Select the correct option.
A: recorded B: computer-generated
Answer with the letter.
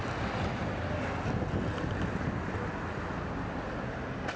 A